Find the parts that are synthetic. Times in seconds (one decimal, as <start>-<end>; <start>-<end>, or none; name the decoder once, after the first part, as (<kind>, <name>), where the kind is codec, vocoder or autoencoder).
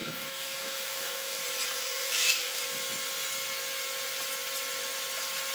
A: 0.0-1.4 (codec, DAC); 1.8-2.6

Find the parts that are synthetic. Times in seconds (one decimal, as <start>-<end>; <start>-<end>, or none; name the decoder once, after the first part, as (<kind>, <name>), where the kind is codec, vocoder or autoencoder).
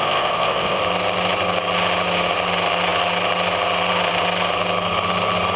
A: 0.0-0.8 (codec, ZipCodec)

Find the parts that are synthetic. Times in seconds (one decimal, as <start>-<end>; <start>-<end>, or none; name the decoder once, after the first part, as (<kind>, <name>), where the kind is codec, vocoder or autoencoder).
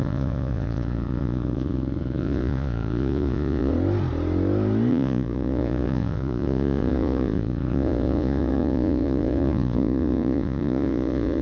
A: 0.0-3.7 (vocoder, Vocos); 4.9-11.4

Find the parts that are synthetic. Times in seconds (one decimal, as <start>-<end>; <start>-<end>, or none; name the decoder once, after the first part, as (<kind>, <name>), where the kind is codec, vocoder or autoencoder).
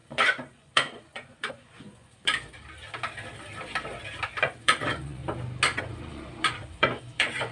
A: 0.0-2.3 (vocoder, Vocos); 4.4-5.2; 5.8-7.5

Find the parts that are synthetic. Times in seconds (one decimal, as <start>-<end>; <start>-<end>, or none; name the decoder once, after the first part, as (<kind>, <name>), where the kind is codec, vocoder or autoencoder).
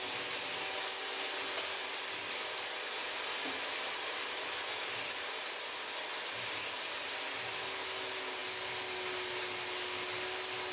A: none